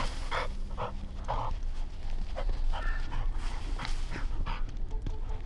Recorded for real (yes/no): yes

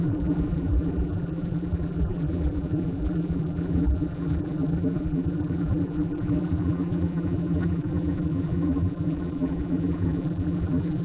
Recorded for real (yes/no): no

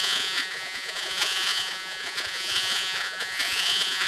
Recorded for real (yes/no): no